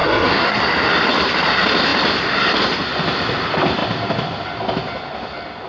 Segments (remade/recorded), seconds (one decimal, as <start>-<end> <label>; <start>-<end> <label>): 0.0-0.6 remade; 0.6-5.7 recorded